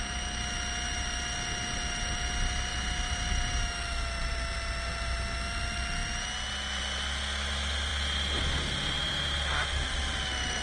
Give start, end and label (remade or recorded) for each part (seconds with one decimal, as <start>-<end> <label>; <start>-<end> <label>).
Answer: 0.0-2.7 recorded; 2.7-3.6 remade; 3.6-10.6 recorded